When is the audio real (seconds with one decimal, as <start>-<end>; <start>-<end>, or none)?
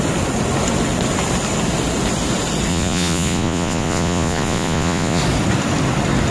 0.0-2.7; 5.2-6.3